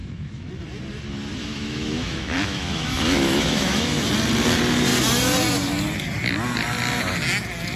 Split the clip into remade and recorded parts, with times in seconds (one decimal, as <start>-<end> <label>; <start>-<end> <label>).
0.0-0.5 remade; 0.5-1.4 recorded; 1.4-4.1 remade; 4.1-7.8 recorded